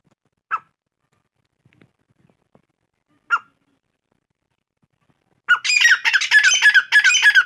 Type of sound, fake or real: real